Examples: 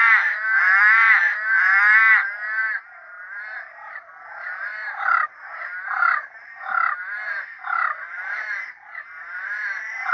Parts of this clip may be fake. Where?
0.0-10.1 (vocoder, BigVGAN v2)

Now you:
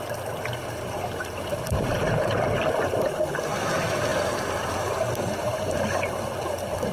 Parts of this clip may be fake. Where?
0.6-1.5 (vocoder, BigVGAN v2)

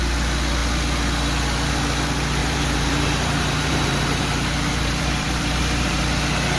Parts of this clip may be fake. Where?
2.4-6.0 (vocoder, BigVGAN v2)

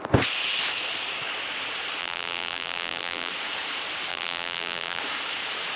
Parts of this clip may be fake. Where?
2.0-3.3 (vocoder, BigVGAN v2); 4.1-5.0